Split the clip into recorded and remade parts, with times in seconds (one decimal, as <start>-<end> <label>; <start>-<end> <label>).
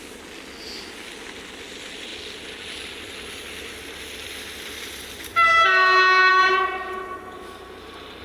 0.0-8.2 recorded